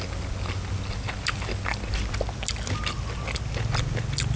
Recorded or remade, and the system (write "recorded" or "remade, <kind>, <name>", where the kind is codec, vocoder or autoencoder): recorded